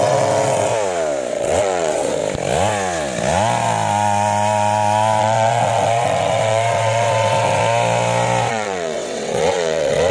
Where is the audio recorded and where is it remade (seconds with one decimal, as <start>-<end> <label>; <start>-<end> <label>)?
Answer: 0.0-0.7 remade; 0.7-1.3 recorded; 1.3-2.2 remade; 2.2-5.2 recorded; 5.2-7.6 remade; 7.6-8.5 recorded; 8.5-10.1 remade

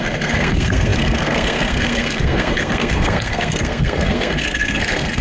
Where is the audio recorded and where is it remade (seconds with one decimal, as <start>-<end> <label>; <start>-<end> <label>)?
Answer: 0.0-5.2 remade